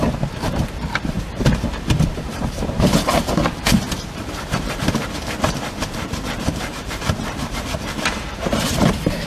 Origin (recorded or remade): remade